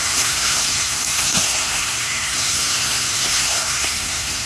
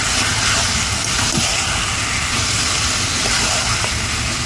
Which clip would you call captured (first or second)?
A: second